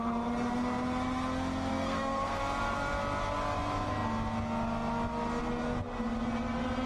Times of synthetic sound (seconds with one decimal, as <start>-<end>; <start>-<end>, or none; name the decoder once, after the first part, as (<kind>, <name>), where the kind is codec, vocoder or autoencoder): 1.7-2.4 (codec, SNAC)